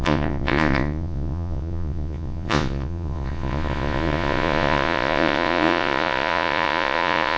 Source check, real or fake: fake